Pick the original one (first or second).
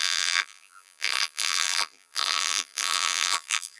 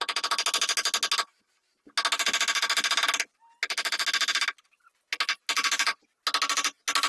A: second